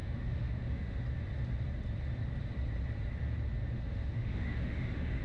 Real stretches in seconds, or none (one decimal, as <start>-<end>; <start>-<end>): 1.0-3.9